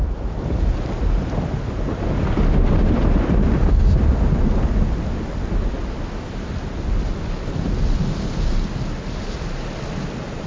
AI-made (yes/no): no